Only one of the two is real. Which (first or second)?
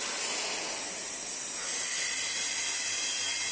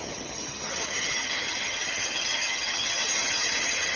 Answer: first